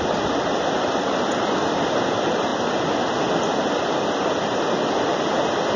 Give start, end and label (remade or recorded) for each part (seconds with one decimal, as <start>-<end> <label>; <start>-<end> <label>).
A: 0.0-5.8 recorded